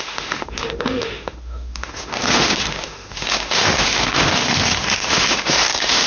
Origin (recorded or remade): remade